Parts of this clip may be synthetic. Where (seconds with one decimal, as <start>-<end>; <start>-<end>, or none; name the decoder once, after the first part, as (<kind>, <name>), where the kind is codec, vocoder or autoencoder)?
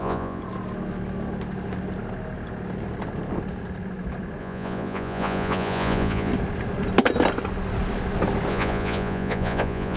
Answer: 0.0-0.4 (vocoder, Vocos); 4.4-6.3; 8.5-10.0